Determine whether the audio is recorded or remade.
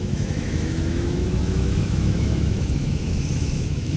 remade